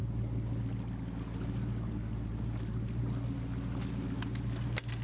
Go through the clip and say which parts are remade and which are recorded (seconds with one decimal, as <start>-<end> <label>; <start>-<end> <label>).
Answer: 0.0-5.0 recorded